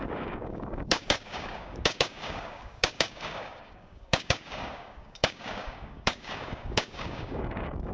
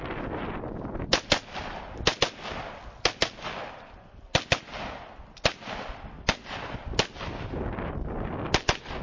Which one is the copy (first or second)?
first